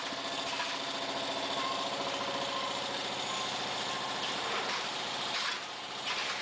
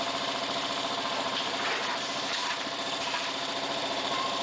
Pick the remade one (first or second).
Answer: second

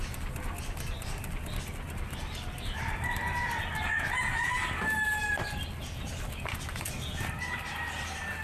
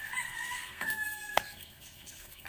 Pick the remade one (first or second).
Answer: second